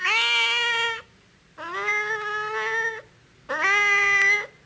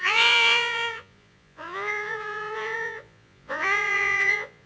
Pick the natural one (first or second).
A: first